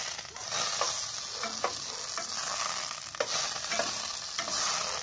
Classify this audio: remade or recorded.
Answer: recorded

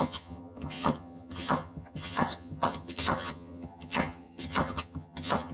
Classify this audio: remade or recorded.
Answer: remade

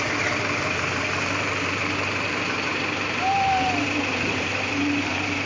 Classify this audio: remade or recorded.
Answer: remade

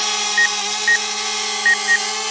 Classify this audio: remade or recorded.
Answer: recorded